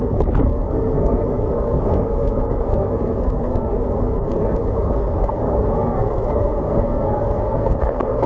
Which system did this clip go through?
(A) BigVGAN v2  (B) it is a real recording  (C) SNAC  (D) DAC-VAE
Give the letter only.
C